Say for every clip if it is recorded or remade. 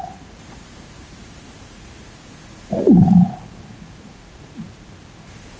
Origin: remade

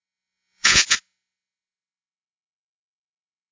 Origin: remade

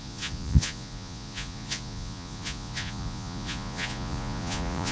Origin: remade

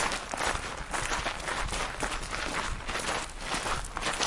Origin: recorded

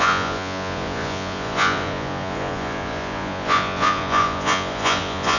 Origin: remade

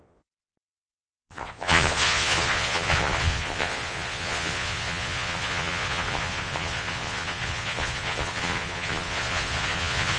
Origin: remade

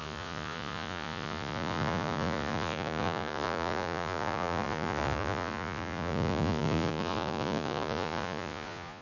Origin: remade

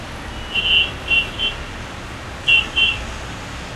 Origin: recorded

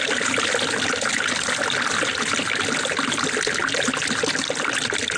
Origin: recorded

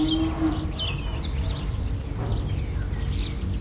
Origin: recorded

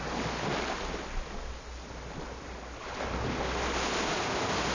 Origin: recorded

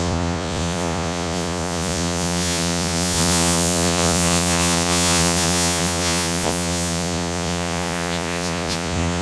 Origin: remade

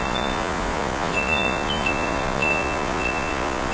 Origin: remade